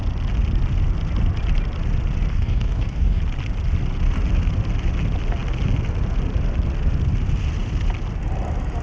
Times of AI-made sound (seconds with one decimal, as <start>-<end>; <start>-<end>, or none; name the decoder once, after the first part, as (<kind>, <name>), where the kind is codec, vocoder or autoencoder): 2.3-3.2 (codec, DAC)